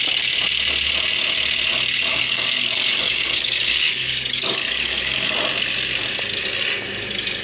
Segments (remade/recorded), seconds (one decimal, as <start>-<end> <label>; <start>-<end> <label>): 0.0-2.1 recorded; 2.1-5.3 remade; 5.3-7.4 recorded